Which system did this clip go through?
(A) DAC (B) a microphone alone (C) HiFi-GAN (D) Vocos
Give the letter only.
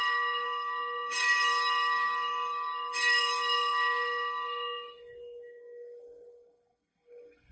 A